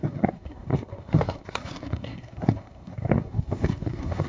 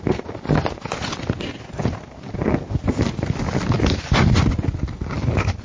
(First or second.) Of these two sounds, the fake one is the first